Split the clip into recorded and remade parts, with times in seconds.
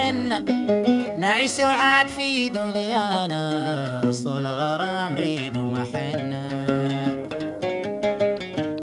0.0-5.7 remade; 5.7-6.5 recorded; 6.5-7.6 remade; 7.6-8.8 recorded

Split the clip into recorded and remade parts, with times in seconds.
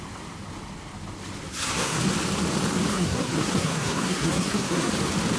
0.0-1.5 recorded; 1.5-2.0 remade; 2.0-2.9 recorded; 2.9-4.9 remade; 4.9-5.4 recorded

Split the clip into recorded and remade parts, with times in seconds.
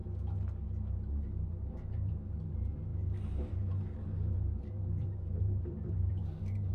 0.0-0.9 recorded; 0.9-6.7 remade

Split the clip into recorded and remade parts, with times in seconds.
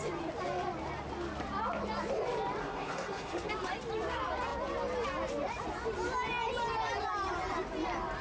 0.0-2.6 recorded; 2.6-3.5 remade; 3.5-8.2 recorded